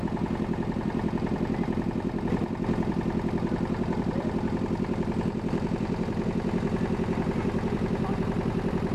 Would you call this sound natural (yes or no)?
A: no